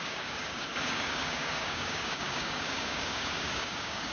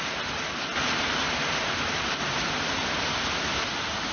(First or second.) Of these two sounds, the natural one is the second